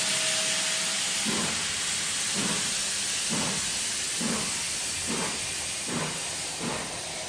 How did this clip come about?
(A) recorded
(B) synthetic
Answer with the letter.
A